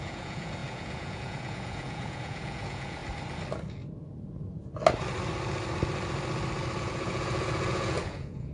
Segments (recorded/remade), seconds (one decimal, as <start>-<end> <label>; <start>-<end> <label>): 0.0-3.0 remade; 3.0-6.8 recorded; 6.8-8.5 remade